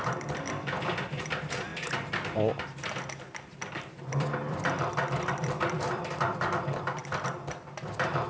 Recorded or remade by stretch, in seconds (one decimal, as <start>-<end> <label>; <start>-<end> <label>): 0.0-1.7 remade; 1.7-3.7 recorded; 3.7-8.3 remade